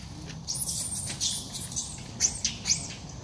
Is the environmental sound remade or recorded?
recorded